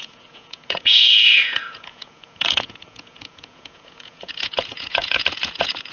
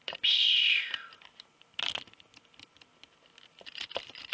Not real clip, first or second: first